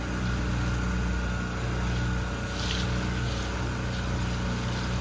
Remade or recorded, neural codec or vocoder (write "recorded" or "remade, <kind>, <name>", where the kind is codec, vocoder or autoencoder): recorded